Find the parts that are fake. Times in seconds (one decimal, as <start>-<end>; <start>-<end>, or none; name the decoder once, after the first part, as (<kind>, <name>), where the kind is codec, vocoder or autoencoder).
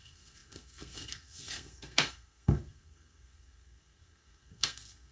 0.0-5.1 (codec, SNAC)